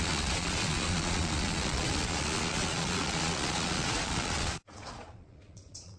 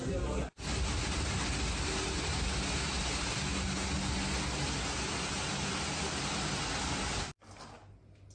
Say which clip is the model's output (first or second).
first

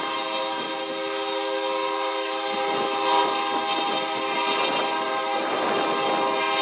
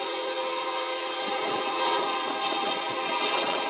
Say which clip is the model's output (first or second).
second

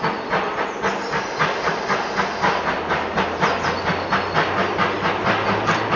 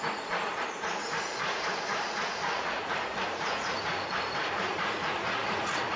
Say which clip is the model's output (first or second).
second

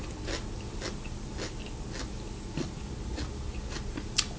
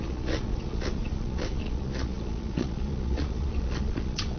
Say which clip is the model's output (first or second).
second